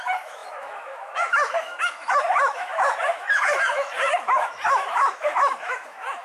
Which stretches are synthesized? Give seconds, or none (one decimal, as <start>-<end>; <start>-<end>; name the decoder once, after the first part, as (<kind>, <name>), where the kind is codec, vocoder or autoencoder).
0.0-6.2 (autoencoder, DAC-VAE)